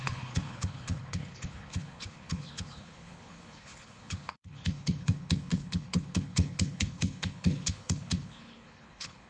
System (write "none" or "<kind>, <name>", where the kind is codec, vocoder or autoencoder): codec, HILCodec